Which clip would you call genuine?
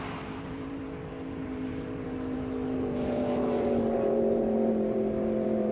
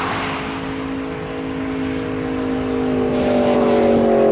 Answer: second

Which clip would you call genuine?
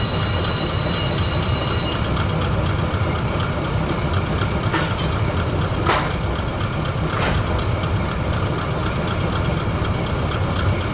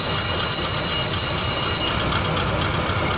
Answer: second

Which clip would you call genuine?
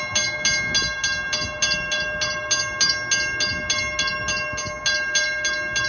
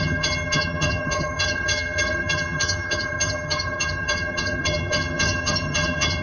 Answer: first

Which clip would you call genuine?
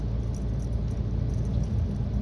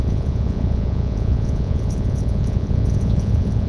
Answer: first